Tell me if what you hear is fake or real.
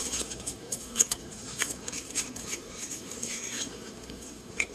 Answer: fake